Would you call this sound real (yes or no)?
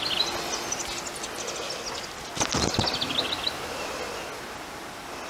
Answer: yes